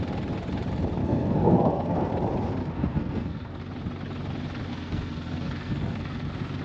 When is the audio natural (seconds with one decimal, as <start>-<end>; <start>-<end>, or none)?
0.0-1.0; 2.1-2.6; 3.6-4.7